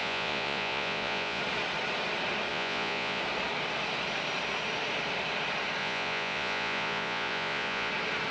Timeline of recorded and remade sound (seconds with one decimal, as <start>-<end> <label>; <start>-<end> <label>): 0.0-1.4 remade; 1.4-2.5 recorded; 2.5-3.2 remade; 3.2-5.8 recorded; 5.8-7.9 remade; 7.9-8.3 recorded